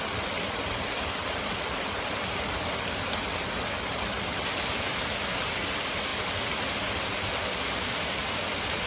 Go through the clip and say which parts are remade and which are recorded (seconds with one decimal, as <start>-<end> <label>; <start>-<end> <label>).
0.0-8.9 recorded